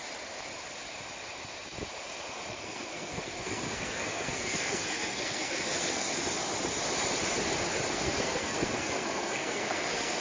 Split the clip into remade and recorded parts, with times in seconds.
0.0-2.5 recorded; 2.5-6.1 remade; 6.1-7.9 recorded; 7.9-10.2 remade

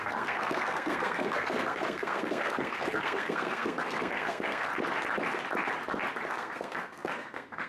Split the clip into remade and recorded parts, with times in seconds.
0.0-4.7 remade; 4.7-6.3 recorded; 6.3-7.7 remade

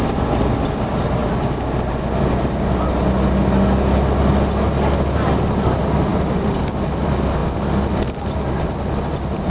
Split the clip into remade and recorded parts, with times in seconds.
0.0-9.5 recorded

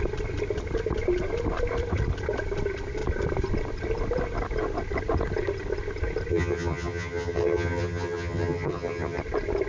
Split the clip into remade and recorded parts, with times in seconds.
0.0-6.3 recorded; 6.3-9.2 remade; 9.2-9.7 recorded

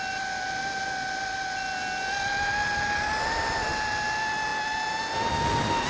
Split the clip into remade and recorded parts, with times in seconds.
0.0-5.9 recorded